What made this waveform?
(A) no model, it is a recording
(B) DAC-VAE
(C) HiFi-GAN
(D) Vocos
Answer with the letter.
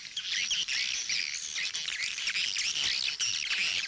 A